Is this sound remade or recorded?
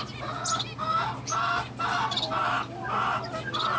recorded